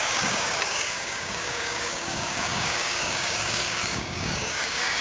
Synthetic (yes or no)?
yes